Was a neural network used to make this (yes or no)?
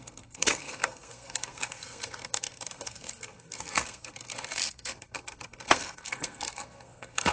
yes